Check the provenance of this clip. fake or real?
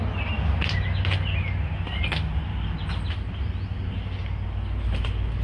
real